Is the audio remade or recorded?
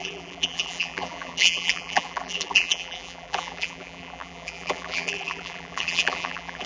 remade